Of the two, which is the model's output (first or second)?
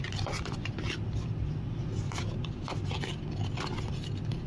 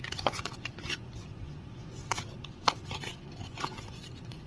second